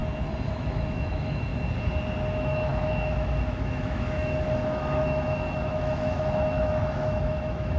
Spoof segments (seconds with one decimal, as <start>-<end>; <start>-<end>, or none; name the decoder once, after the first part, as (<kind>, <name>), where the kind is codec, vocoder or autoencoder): 0.5-1.5 (autoencoder, DAC-VAE); 2.3-7.8